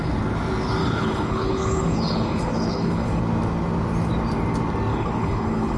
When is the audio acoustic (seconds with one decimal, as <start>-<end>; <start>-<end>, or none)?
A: 0.0-0.8; 3.2-4.9